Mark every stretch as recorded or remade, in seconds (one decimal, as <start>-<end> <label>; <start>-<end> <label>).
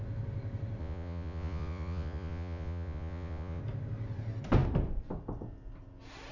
0.0-0.8 recorded; 0.8-3.6 remade; 3.6-6.3 recorded